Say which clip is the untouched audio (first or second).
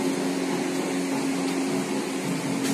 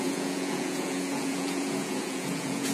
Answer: first